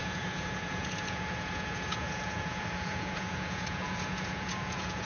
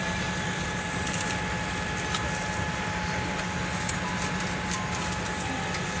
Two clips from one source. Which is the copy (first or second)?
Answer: first